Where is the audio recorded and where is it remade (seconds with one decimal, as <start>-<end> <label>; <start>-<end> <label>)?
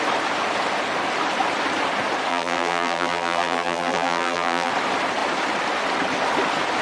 0.0-2.3 recorded; 2.3-4.7 remade; 4.7-6.8 recorded